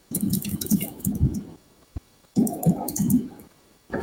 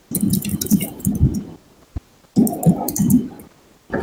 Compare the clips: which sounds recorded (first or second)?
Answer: second